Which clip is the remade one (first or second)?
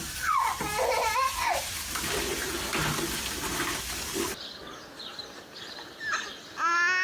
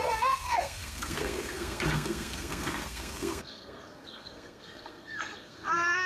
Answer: second